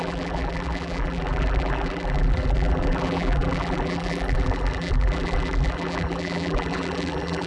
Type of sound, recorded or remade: remade